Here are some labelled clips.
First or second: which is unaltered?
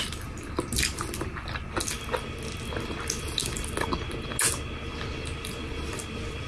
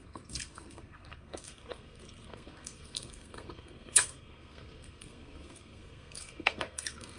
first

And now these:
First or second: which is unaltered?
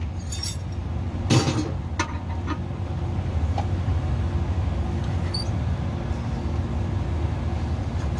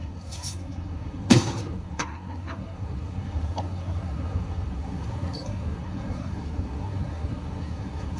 first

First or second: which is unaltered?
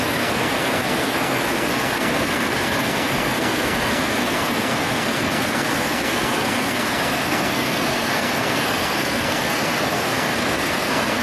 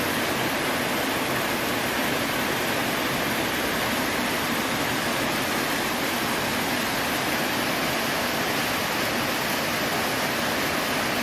second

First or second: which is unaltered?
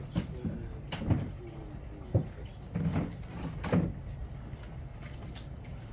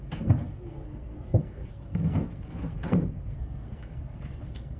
first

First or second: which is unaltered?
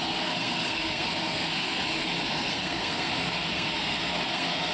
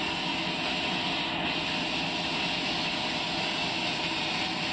second